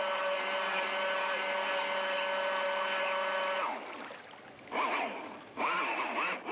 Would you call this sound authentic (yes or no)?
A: yes